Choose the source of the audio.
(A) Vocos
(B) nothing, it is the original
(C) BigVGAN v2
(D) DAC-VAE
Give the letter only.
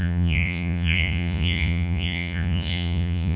A